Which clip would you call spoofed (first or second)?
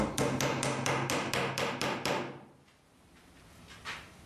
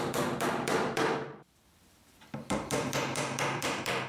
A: second